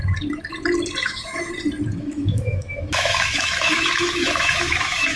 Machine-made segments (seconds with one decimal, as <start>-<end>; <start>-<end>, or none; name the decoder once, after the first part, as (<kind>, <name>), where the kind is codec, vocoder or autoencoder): 1.0-1.5 (autoencoder, DAC-VAE); 2.0-5.2